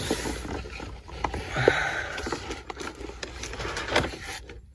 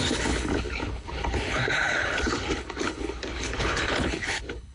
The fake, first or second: second